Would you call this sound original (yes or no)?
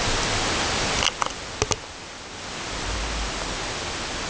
yes